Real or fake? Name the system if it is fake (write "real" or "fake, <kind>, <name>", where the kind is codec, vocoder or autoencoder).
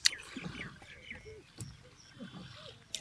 real